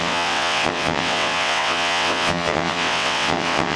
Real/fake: fake